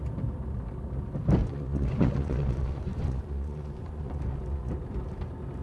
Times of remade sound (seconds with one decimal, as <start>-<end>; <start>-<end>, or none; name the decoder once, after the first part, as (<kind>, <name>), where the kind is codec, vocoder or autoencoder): 1.4-4.7 (vocoder, Vocos)